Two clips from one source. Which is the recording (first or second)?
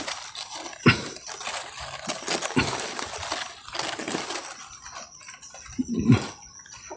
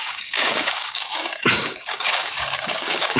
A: first